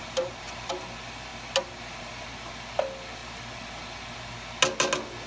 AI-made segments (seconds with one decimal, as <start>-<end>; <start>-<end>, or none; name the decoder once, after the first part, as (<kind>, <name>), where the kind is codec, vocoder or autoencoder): 0.0-0.7 (vocoder, BigVGAN v2)